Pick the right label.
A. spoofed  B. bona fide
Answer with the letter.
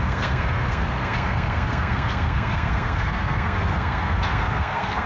A